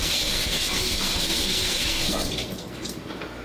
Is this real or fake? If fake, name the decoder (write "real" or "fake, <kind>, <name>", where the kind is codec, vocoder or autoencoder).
fake, codec, SNAC